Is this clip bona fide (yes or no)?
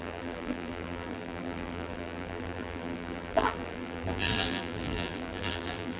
no